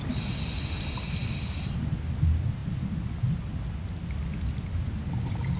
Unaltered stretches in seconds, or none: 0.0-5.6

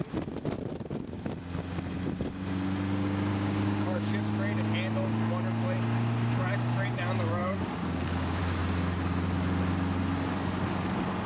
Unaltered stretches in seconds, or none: 0.0-3.3; 4.1-7.4; 8.4-11.3

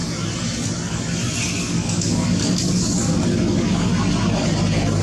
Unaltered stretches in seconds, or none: 0.0-1.6; 3.9-5.0

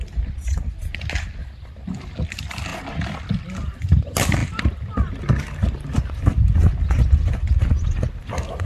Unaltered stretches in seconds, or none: 0.0-8.7

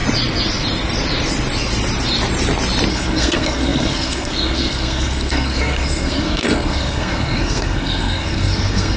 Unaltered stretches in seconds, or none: 0.0-2.9

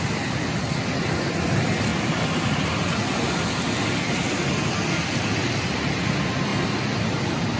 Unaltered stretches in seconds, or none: 0.0-7.6

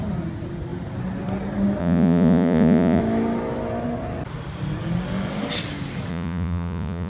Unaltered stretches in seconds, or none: 0.0-1.8; 3.0-6.1

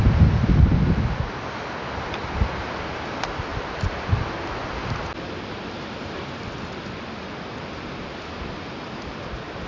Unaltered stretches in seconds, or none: 0.0-9.7